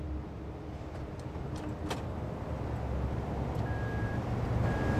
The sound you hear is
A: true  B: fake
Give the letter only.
A